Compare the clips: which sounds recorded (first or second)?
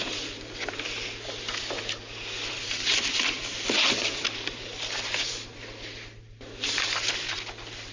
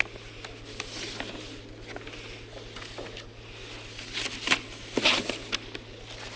second